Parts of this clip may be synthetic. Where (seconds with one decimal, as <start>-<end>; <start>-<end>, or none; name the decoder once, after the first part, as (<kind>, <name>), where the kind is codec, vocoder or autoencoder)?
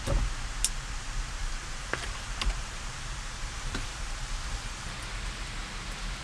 1.4-5.1 (vocoder, BigVGAN v2)